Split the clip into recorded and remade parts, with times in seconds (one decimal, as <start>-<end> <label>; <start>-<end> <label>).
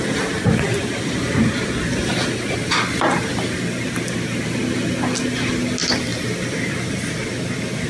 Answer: 0.0-7.9 recorded